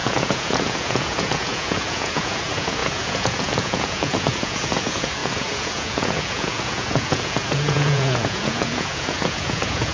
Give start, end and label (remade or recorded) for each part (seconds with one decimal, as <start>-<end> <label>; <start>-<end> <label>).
0.0-9.9 remade